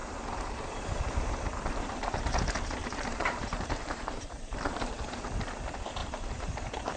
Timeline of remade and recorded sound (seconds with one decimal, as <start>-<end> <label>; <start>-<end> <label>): 0.0-2.2 remade; 2.2-2.8 recorded; 2.8-4.9 remade; 4.9-6.0 recorded; 6.0-6.5 remade; 6.5-7.0 recorded